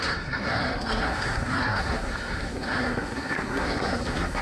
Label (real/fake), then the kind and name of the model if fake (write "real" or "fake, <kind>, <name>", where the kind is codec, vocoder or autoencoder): fake, codec, SNAC